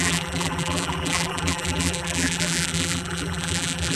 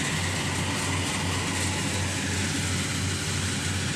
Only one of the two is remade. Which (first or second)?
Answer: first